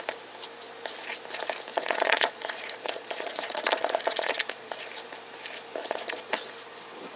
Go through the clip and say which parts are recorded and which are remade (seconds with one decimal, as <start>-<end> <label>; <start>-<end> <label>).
0.0-1.7 recorded; 1.7-4.8 remade; 4.8-5.8 recorded; 5.8-6.5 remade; 6.5-7.2 recorded